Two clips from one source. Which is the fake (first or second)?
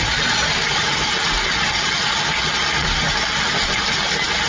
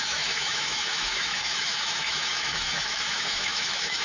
second